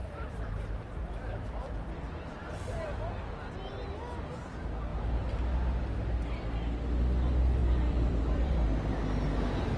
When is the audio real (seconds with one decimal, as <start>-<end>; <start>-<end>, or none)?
0.9-7.6; 8.6-9.8